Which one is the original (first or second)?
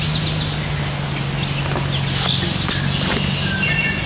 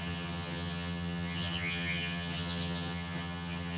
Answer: first